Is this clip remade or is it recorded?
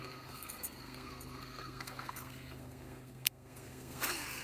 remade